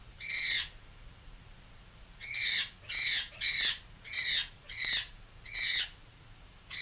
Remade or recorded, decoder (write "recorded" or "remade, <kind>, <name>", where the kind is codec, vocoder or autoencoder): remade, vocoder, Vocos